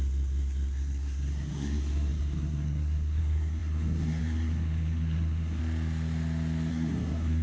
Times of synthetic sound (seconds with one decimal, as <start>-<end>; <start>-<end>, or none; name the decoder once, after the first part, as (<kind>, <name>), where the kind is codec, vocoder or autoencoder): 0.0-5.6 (codec, SNAC); 6.7-7.4